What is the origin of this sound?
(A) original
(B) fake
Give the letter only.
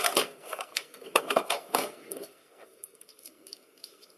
B